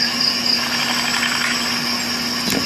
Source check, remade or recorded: recorded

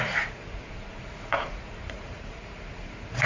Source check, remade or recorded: remade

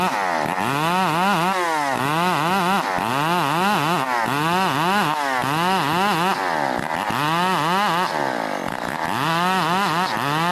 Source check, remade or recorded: recorded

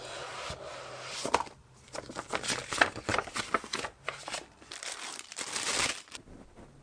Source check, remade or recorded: recorded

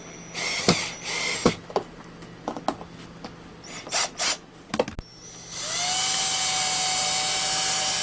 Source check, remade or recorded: recorded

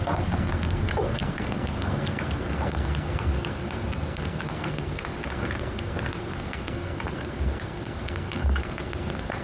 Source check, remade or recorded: remade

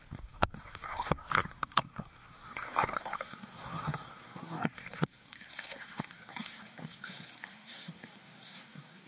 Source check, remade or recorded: remade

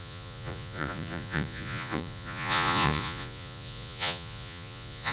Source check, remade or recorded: remade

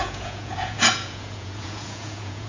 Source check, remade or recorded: remade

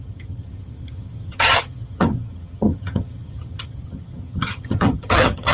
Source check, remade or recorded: remade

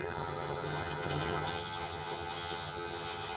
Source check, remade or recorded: remade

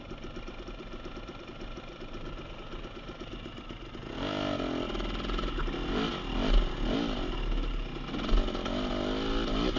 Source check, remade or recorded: recorded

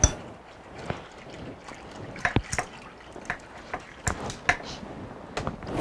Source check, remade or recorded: recorded